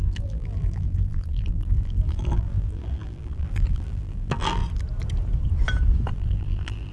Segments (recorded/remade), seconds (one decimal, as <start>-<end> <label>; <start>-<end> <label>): 0.0-4.6 remade; 4.6-6.1 recorded; 6.1-6.9 remade